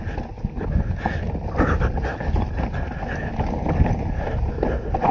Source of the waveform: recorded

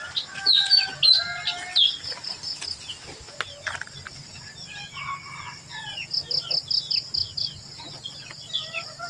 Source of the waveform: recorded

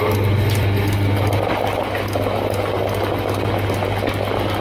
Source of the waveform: recorded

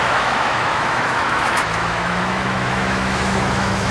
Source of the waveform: remade